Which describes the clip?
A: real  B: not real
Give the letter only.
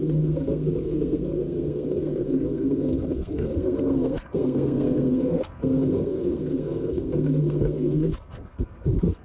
B